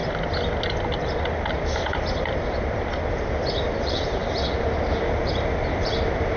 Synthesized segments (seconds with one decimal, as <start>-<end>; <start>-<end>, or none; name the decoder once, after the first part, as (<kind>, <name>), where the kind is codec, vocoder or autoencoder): 3.8-6.4 (vocoder, BigVGAN v2)